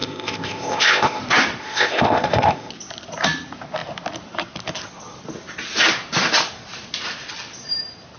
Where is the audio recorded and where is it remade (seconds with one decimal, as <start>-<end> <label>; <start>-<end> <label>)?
0.0-1.2 remade; 1.2-1.6 recorded; 1.6-2.7 remade; 2.7-8.2 recorded